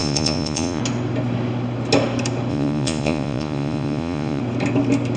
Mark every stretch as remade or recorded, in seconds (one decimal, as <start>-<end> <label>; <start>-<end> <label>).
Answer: 0.0-0.8 remade; 0.8-2.5 recorded; 2.5-4.4 remade; 4.4-5.2 recorded